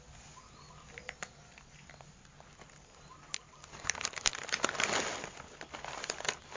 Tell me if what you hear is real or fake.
real